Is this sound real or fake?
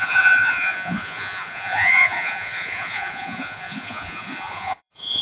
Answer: fake